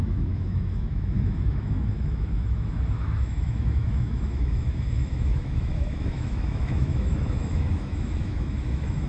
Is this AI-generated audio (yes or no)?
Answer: yes